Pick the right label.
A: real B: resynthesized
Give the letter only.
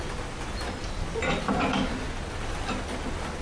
A